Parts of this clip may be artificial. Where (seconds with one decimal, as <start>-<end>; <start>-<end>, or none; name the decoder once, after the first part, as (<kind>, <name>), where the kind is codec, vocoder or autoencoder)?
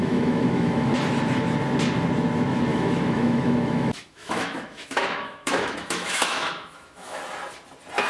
0.0-0.9 (autoencoder, DAC-VAE); 2.7-7.2